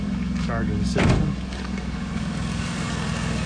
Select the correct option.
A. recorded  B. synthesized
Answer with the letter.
B